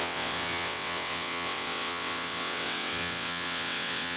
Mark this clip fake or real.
fake